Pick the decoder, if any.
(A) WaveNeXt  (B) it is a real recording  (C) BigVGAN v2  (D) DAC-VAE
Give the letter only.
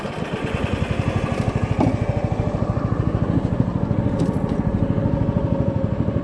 B